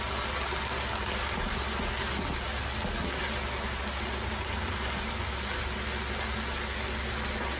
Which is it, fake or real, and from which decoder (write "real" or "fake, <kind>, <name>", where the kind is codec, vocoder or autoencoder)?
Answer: real